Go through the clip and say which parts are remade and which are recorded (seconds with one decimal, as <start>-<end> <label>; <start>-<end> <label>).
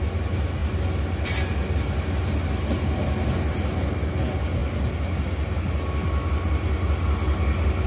0.0-7.9 recorded